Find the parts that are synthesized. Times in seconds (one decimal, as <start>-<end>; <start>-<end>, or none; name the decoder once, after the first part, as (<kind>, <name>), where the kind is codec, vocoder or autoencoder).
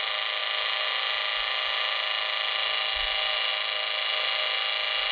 none